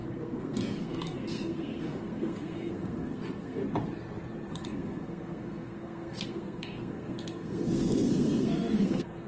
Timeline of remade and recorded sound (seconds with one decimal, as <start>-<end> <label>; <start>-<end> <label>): 0.0-3.6 remade; 3.6-4.5 recorded; 4.5-9.3 remade